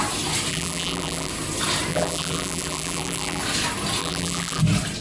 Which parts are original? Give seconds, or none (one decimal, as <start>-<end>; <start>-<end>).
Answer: 0.0-0.5; 1.3-1.9; 3.4-4.0; 4.6-5.0